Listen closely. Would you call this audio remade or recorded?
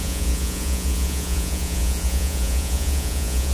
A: remade